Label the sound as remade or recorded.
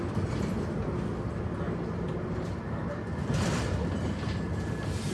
recorded